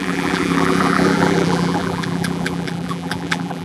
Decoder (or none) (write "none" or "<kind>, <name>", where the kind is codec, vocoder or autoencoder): vocoder, BigVGAN v2